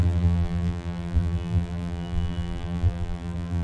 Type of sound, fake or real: fake